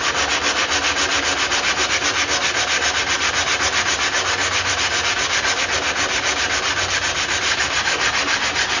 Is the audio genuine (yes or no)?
yes